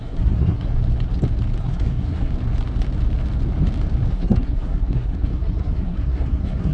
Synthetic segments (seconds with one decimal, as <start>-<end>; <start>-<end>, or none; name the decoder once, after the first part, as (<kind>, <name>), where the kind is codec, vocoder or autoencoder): 0.0-0.7 (codec, SNAC); 1.6-2.3; 4.1-6.7